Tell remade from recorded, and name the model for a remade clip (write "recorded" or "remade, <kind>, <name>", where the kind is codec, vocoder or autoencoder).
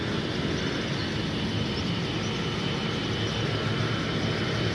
recorded